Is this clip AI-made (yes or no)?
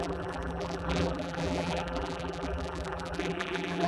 yes